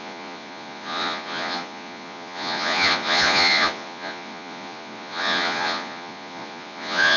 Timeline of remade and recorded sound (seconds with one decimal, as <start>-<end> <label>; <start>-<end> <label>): 0.0-7.2 remade